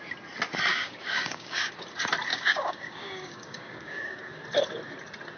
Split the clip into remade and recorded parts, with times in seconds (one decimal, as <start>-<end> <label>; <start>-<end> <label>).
0.0-0.7 recorded; 0.7-1.7 remade; 1.7-2.3 recorded; 2.3-4.2 remade; 4.2-5.4 recorded